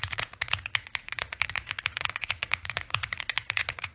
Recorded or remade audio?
remade